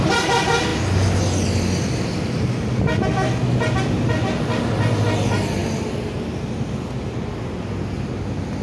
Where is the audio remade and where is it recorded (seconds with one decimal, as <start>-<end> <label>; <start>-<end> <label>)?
0.0-8.6 recorded